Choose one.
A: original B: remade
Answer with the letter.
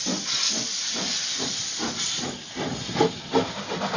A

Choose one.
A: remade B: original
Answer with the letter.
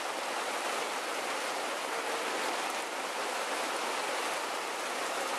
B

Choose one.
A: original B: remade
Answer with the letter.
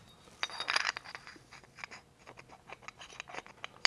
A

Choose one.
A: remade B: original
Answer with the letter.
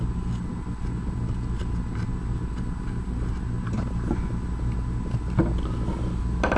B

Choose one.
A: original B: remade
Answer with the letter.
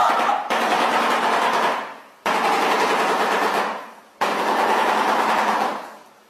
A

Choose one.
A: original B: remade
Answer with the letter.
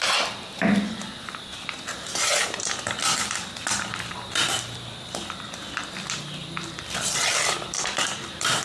B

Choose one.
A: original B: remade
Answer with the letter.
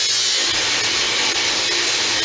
A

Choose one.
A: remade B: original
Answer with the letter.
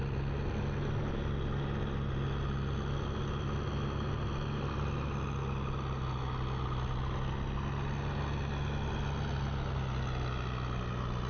B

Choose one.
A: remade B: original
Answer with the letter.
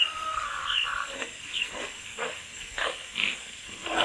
A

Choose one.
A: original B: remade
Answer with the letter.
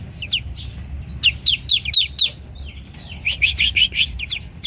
A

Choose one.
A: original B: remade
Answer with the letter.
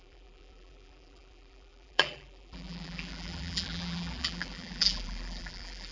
B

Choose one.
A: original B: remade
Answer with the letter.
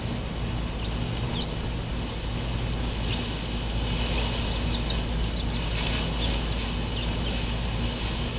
A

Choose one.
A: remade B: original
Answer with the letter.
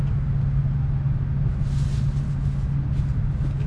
B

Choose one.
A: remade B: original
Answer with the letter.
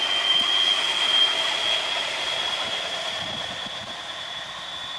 B